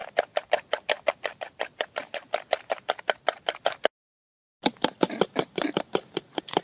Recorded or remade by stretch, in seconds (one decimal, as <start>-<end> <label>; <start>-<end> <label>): 0.0-1.1 recorded; 1.1-2.0 remade; 2.0-5.3 recorded; 5.3-6.6 remade